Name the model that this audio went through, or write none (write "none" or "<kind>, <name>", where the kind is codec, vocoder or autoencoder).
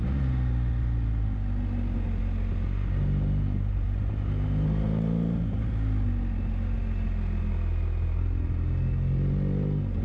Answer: none